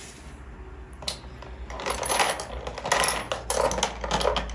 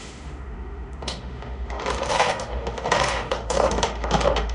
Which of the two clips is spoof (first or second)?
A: second